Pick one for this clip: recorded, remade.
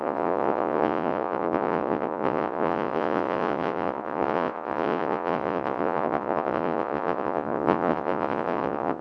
remade